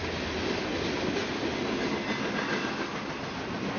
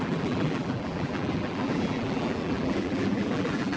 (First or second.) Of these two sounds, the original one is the first